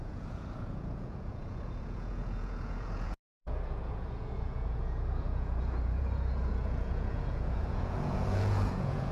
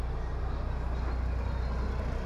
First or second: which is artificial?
first